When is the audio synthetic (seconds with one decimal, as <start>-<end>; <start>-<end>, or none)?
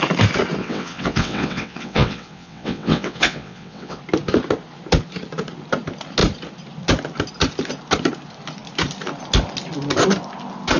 0.6-4.0